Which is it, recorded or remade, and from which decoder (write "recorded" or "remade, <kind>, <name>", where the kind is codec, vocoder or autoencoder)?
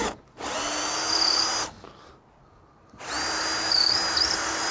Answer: recorded